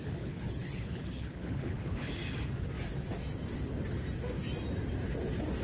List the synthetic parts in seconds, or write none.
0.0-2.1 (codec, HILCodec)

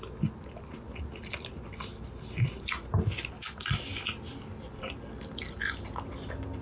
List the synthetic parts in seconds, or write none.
none